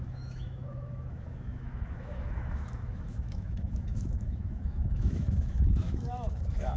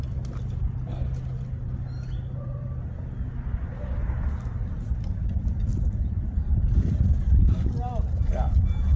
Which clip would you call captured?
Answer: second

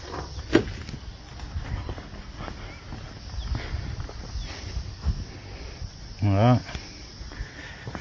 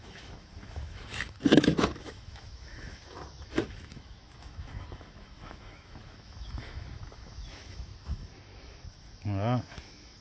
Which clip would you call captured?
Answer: first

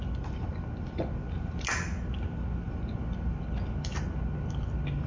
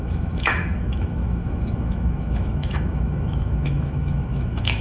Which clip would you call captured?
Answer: first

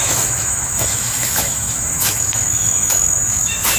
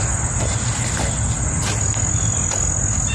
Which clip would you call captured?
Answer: second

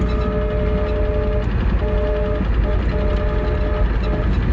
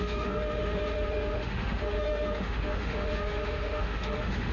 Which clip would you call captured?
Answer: first